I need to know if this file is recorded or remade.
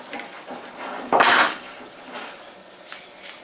recorded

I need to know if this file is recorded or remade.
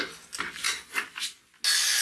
recorded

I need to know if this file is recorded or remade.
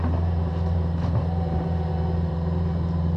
remade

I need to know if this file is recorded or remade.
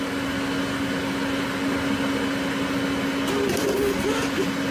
recorded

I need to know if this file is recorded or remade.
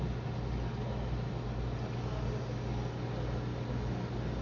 recorded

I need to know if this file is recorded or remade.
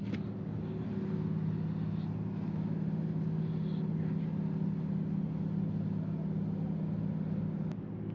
recorded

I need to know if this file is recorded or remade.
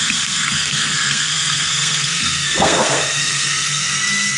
remade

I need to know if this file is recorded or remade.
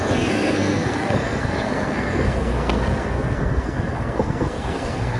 remade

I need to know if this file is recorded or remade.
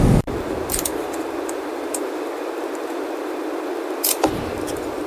recorded